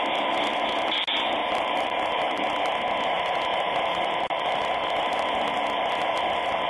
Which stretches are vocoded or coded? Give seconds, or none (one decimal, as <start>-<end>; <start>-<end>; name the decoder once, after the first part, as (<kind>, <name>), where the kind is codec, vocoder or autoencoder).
1.4-2.5 (vocoder, BigVGAN v2); 3.5-5.1